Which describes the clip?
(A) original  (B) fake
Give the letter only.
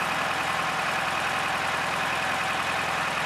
A